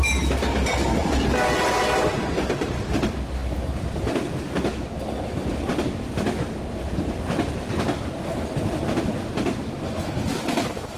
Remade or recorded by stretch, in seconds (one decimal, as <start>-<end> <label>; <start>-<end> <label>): 0.0-11.0 recorded